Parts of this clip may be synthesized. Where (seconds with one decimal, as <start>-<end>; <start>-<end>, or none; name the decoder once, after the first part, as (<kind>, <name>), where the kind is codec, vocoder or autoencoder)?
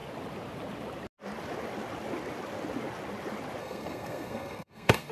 3.6-5.1 (codec, SNAC)